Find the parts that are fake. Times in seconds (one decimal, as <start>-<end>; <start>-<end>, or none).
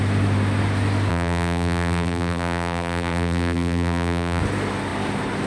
1.1-4.4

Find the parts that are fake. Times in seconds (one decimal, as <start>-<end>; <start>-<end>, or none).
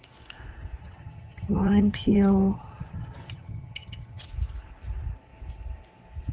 0.8-4.3